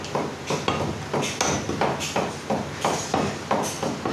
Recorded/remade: recorded